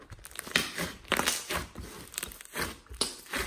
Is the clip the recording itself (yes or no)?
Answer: yes